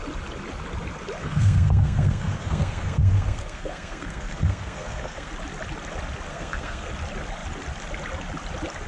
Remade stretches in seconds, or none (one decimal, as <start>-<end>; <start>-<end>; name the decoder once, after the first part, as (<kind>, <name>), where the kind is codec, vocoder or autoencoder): 1.2-5.3 (codec, SNAC); 6.3-6.9